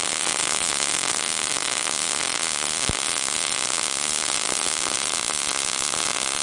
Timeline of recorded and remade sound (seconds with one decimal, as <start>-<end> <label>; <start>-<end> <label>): 0.0-0.4 recorded; 0.4-1.1 remade; 1.1-6.4 recorded